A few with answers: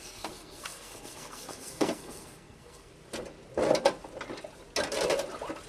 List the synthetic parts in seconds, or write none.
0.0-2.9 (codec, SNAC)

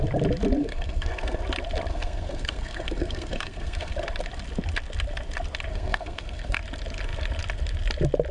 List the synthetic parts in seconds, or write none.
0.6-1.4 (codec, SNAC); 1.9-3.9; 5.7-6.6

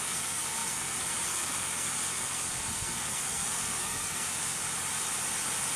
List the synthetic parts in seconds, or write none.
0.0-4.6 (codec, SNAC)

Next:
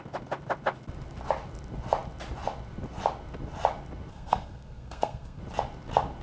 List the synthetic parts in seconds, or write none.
4.1-5.4 (codec, SNAC)

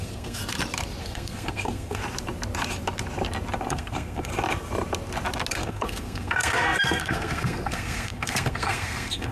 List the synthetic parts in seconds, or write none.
0.0-0.4 (codec, SNAC); 1.0-2.0; 3.7-4.3; 5.5-9.3